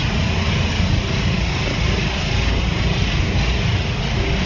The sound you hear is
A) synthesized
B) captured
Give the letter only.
B